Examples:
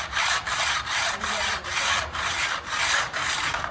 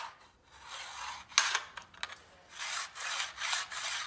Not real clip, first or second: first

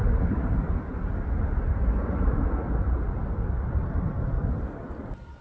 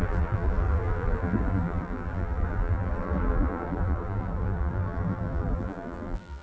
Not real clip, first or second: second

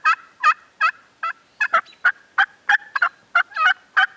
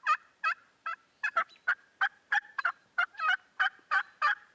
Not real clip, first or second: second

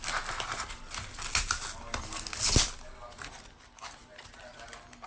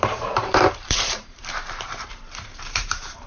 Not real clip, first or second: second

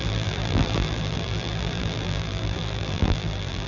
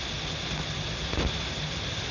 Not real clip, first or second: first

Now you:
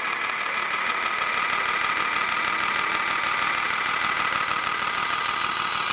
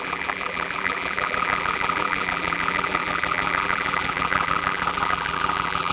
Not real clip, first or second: second